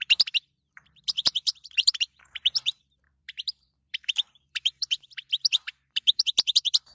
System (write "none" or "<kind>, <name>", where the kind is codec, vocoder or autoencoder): vocoder, BigVGAN v2